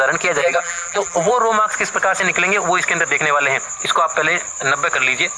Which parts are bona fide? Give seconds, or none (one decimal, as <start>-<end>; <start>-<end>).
0.0-0.4; 1.3-5.4